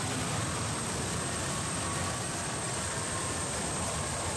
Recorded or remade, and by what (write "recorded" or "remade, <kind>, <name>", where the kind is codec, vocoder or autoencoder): recorded